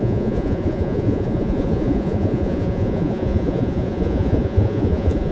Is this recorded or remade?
remade